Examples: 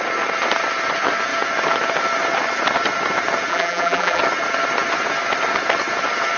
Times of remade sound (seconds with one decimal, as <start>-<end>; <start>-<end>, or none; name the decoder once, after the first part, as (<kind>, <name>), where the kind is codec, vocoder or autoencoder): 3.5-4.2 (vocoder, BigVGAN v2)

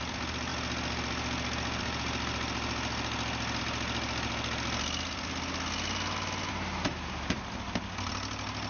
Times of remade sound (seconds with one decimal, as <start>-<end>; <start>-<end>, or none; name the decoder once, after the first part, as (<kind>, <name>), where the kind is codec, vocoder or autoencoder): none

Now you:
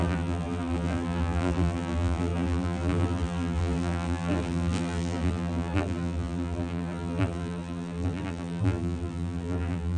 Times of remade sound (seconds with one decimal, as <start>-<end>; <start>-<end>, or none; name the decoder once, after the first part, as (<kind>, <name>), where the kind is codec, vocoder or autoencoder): 0.0-10.0 (vocoder, BigVGAN v2)

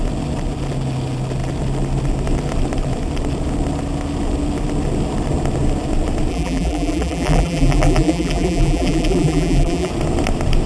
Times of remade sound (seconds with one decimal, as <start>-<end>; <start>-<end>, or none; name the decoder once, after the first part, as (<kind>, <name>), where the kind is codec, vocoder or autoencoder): 6.3-9.9 (vocoder, BigVGAN v2)